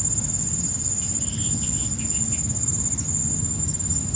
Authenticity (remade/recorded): recorded